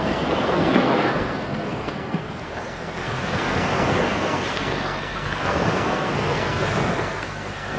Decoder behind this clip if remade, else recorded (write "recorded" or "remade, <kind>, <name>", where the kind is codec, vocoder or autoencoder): remade, codec, SNAC